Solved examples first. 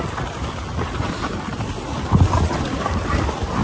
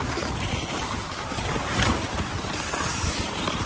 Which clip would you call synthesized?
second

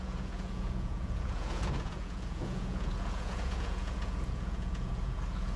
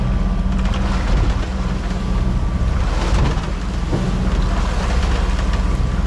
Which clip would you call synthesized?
first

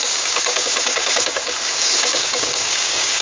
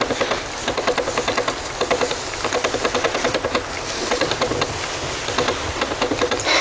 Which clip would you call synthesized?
first